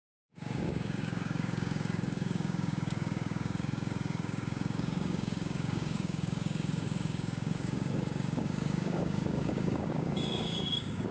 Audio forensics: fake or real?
fake